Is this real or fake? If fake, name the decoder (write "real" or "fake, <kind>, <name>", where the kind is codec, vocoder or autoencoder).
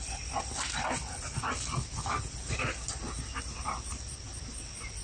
real